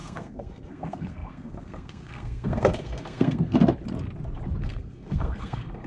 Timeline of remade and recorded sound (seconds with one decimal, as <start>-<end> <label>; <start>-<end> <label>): 0.0-3.6 remade; 3.6-4.6 recorded; 4.6-5.9 remade